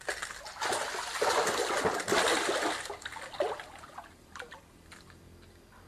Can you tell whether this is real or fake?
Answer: real